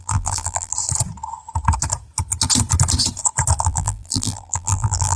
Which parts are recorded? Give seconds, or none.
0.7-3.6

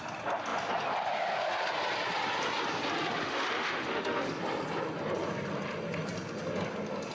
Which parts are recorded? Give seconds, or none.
0.0-3.2; 4.3-7.1

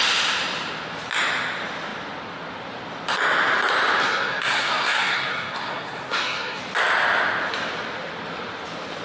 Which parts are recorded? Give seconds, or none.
0.0-4.0; 6.6-9.0

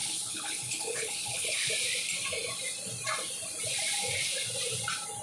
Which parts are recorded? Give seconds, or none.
1.7-5.2

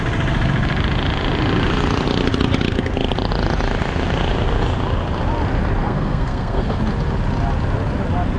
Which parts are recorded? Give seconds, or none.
0.0-5.8; 6.8-8.4

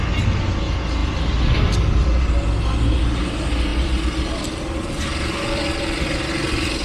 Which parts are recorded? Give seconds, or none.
0.0-3.7; 6.3-6.8

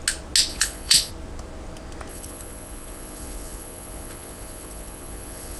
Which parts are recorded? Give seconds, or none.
0.0-0.5; 1.1-2.1